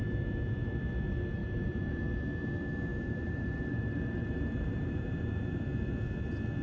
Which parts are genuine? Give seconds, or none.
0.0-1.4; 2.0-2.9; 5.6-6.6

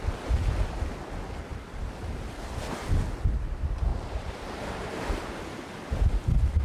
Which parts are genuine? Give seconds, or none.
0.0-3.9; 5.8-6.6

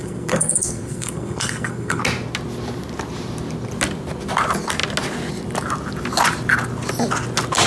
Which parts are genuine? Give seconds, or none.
2.0-7.7